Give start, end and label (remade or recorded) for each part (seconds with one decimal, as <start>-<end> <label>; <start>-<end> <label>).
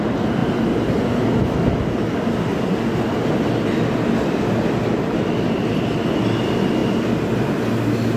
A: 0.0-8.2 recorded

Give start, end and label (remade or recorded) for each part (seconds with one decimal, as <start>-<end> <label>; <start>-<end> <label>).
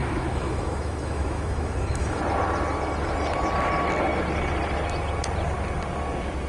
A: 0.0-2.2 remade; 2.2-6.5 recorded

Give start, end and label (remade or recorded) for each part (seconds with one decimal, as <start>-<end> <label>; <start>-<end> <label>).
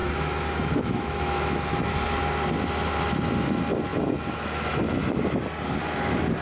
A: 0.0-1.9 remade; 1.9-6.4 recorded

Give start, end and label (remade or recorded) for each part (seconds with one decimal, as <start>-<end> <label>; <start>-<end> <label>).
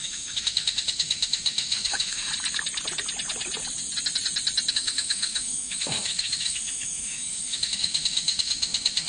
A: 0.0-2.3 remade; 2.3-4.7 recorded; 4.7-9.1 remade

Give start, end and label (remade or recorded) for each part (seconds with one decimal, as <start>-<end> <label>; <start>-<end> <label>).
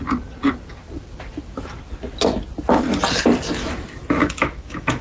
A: 0.0-4.2 recorded; 4.2-5.0 remade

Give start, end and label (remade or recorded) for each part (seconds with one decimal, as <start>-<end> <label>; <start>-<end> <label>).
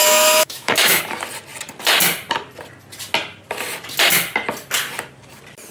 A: 0.0-1.0 remade; 1.0-5.7 recorded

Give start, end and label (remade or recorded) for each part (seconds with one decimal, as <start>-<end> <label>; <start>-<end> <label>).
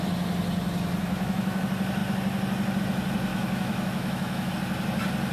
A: 0.0-1.0 recorded; 1.0-1.6 remade; 1.6-3.3 recorded; 3.3-4.5 remade; 4.5-5.3 recorded